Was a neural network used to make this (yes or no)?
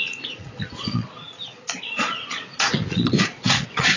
yes